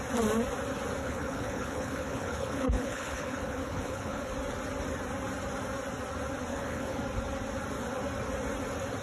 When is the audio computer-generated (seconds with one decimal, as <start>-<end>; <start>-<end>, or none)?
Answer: 1.0-4.3; 6.5-7.0